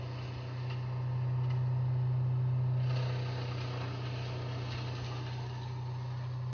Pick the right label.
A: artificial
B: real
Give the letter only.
B